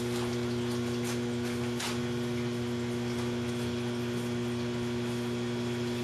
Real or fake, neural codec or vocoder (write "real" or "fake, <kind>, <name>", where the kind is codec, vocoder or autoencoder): real